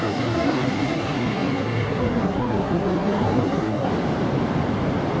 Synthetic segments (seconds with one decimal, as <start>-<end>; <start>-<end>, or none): 0.0-3.9